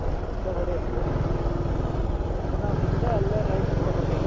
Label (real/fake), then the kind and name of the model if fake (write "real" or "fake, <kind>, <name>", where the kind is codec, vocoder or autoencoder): real